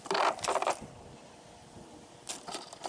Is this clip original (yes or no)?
yes